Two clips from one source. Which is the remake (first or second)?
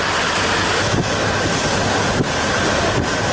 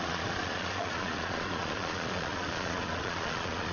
second